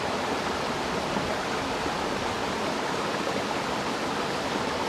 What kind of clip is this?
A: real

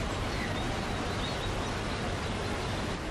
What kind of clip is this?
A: real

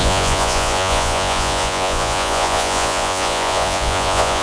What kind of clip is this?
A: fake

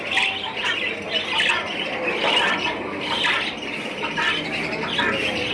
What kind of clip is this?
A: real